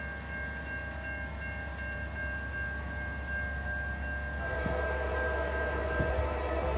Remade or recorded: recorded